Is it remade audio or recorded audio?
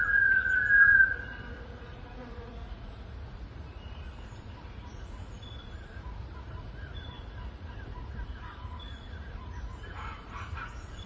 remade